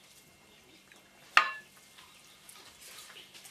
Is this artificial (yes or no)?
no